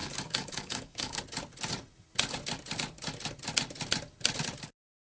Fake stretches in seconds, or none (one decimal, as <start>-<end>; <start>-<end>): 0.0-1.2